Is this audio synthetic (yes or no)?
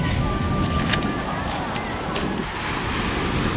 no